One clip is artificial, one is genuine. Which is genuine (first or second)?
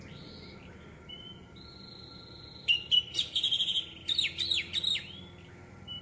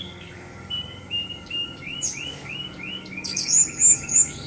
first